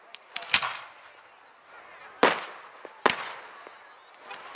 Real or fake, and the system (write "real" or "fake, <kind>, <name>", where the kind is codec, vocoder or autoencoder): real